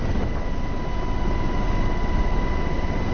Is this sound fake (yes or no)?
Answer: no